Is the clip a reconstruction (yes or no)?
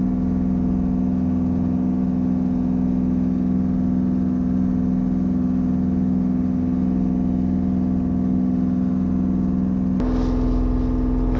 no